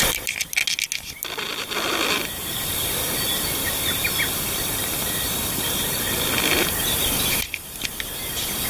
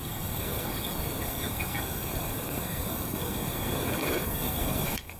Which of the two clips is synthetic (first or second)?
second